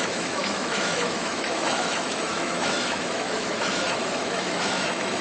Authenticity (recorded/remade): remade